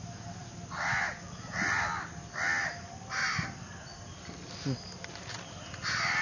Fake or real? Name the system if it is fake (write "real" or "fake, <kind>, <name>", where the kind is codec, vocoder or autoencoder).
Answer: real